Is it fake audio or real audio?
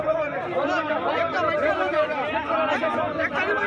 real